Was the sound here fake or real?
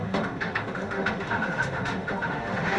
fake